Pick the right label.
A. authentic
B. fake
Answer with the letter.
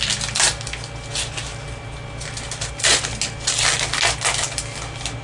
A